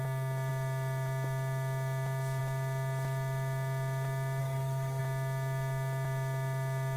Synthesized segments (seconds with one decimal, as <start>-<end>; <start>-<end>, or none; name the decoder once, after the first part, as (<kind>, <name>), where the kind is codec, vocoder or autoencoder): 4.4-5.0 (codec, SNAC)